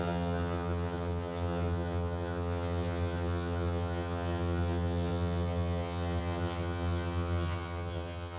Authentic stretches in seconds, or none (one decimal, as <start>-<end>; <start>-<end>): none